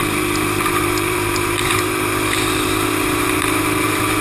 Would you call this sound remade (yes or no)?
yes